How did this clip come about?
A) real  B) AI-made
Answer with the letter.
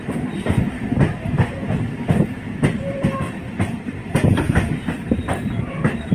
B